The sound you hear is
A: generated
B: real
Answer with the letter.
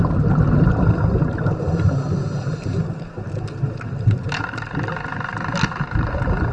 B